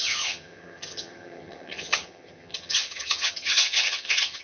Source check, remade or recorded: remade